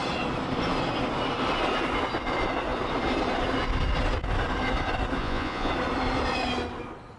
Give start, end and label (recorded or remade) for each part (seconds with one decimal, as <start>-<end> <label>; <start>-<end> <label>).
0.0-5.2 recorded; 5.2-5.7 remade; 5.7-7.2 recorded